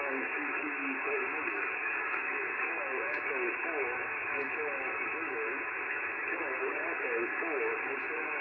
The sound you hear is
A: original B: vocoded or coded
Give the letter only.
B